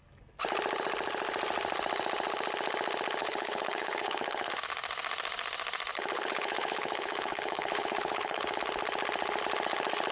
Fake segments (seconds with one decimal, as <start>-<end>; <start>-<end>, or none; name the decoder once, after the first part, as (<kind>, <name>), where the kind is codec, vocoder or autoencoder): 3.2-4.5 (codec, HILCodec); 5.9-8.6